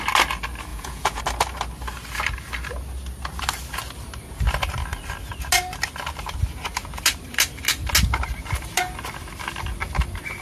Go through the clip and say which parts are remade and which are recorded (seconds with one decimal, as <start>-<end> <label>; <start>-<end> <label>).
0.0-0.7 recorded; 0.7-1.2 remade; 1.2-10.4 recorded